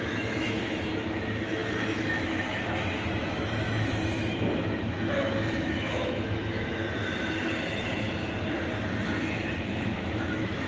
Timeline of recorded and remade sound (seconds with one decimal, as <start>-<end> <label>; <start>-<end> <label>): 0.0-7.0 remade; 7.0-9.4 recorded; 9.4-10.7 remade